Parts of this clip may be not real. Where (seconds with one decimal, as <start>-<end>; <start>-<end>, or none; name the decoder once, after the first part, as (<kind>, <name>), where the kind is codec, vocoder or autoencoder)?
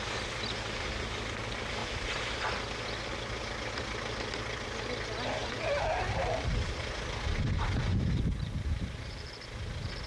1.8-2.5 (vocoder, BigVGAN v2); 5.4-6.5; 7.9-9.3